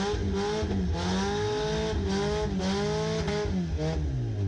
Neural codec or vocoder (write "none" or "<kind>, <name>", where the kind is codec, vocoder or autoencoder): none